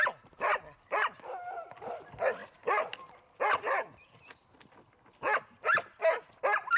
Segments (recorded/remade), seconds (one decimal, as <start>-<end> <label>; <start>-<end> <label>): 0.0-6.8 recorded